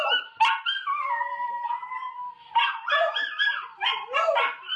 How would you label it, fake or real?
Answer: real